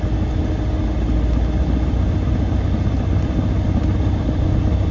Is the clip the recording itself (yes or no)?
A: yes